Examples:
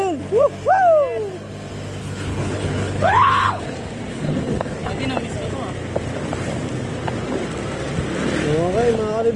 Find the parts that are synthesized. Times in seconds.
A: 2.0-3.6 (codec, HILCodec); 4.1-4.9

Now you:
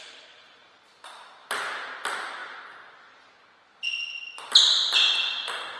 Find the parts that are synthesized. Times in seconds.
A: none

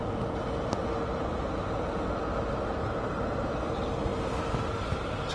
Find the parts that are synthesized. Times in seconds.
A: none